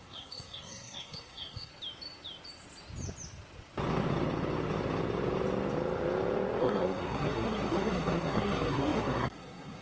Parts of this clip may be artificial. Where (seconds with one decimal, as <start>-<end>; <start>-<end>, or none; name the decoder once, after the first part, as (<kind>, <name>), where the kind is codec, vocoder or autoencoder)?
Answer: 0.0-1.7 (codec, SNAC); 6.6-9.8